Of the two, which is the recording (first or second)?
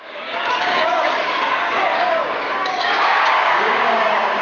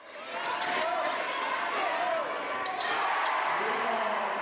second